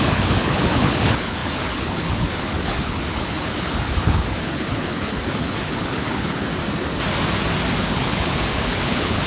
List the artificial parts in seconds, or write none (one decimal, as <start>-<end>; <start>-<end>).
0.0-6.5; 7.8-9.3